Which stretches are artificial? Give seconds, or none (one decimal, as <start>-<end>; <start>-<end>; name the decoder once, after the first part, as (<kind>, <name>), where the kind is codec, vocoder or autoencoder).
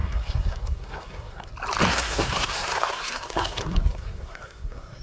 0.0-1.5 (codec, SNAC); 1.9-5.0